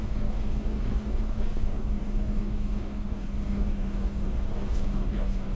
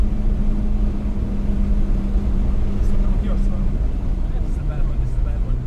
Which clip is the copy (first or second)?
first